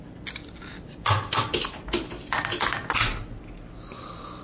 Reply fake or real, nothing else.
real